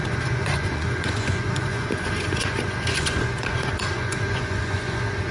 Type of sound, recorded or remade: remade